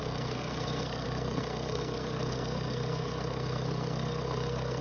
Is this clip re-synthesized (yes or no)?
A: yes